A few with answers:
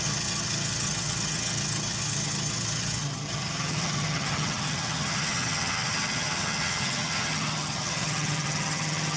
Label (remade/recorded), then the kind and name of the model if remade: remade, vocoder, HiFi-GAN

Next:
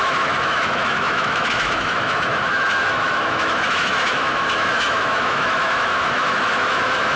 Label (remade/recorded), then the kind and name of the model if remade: remade, autoencoder, DAC-VAE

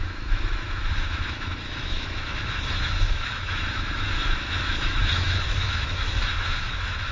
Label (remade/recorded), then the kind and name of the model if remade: remade, autoencoder, DAC-VAE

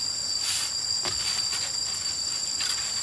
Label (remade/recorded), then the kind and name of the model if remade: recorded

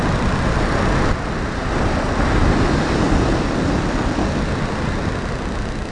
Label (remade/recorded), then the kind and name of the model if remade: recorded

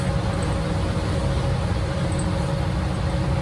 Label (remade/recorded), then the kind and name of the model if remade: recorded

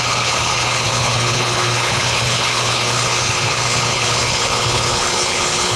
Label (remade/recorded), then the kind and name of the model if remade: remade, codec, HILCodec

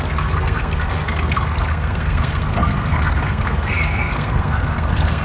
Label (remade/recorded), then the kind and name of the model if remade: remade, codec, SNAC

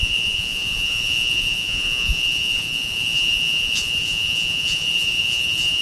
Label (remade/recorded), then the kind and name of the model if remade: remade, vocoder, Vocos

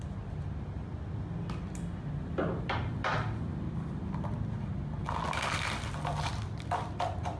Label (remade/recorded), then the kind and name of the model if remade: recorded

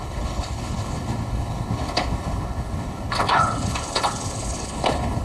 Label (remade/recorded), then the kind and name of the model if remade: remade, codec, HILCodec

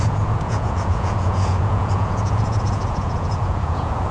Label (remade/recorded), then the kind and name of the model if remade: remade, vocoder, Vocos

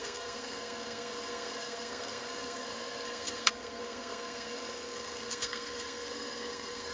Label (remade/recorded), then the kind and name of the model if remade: remade, codec, SNAC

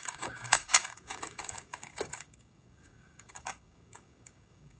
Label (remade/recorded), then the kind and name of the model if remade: remade, codec, DAC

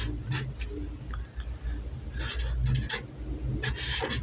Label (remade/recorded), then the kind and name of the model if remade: recorded